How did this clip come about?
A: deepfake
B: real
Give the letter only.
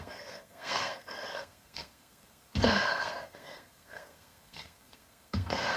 A